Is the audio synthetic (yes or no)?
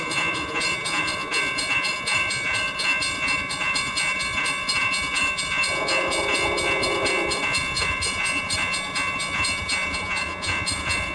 yes